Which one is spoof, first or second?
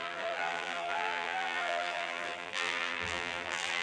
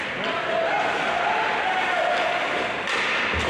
first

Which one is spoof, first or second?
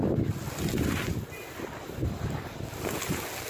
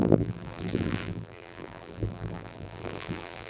second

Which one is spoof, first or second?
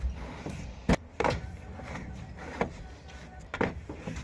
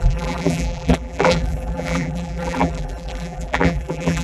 second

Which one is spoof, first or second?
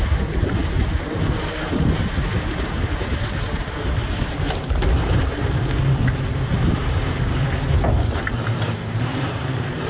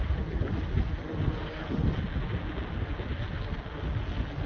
first